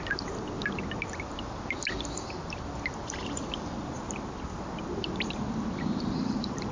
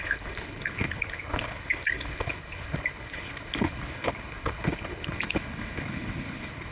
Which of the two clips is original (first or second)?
first